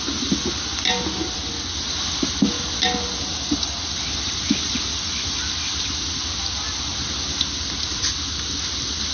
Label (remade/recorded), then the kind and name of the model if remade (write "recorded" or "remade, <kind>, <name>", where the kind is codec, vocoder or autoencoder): remade, vocoder, BigVGAN v2